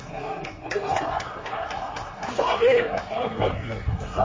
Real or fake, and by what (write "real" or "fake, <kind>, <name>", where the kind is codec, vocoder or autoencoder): fake, codec, SNAC